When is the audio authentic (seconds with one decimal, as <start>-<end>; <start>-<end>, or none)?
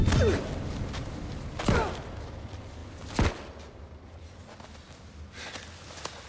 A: 0.0-6.3